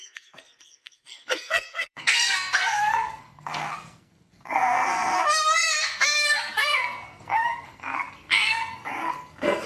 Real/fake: fake